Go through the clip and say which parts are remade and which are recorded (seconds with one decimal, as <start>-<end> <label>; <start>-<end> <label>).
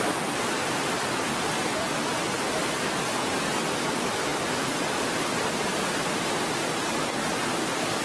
0.0-8.0 recorded